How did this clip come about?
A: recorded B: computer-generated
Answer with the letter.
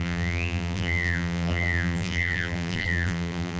B